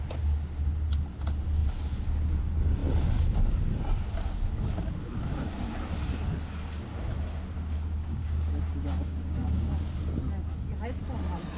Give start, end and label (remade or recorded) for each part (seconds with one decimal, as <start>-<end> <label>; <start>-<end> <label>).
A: 0.0-8.0 recorded; 8.0-9.8 remade; 9.8-11.6 recorded